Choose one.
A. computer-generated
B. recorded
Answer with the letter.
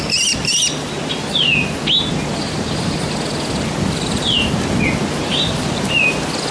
B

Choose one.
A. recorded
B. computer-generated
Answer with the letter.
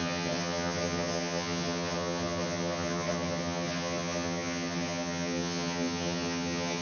B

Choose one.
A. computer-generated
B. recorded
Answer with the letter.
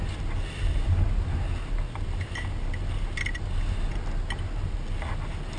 B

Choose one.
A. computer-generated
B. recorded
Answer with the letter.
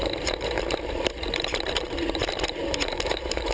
A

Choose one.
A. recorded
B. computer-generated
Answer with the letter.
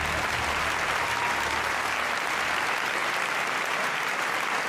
A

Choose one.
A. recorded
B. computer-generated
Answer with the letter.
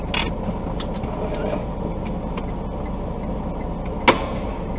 A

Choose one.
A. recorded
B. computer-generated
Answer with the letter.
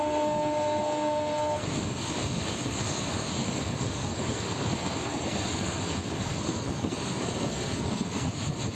B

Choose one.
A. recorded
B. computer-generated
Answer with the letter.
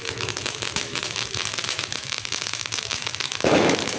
B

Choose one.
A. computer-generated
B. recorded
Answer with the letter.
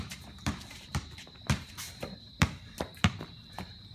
A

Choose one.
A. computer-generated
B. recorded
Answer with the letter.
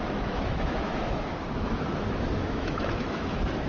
A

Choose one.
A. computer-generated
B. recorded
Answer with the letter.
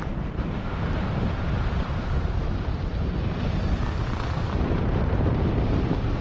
A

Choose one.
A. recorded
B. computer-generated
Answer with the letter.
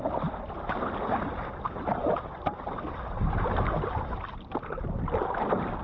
A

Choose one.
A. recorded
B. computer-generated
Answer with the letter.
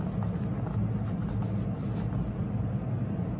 A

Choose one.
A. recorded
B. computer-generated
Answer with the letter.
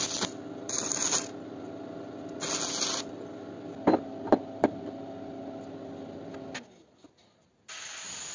A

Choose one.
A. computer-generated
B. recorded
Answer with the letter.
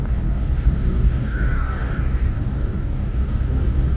A